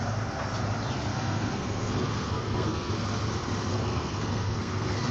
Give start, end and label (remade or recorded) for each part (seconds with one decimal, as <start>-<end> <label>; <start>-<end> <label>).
0.0-1.1 recorded; 1.1-2.9 remade; 2.9-3.7 recorded; 3.7-5.1 remade